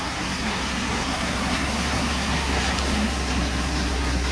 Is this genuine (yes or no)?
no